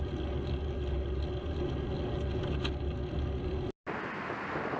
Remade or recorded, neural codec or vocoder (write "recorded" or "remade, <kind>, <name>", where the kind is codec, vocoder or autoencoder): recorded